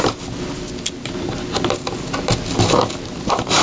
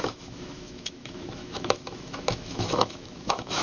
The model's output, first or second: second